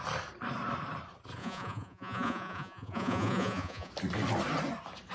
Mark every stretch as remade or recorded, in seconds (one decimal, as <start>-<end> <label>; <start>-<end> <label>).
0.0-1.4 recorded; 1.4-3.9 remade; 3.9-5.1 recorded